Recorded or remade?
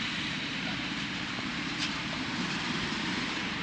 remade